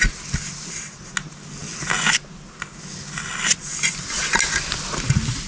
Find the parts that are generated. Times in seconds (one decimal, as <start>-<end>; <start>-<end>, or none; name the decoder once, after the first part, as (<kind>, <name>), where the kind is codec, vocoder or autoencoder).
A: none